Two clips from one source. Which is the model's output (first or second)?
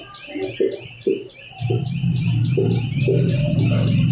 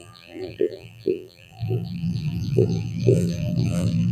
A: second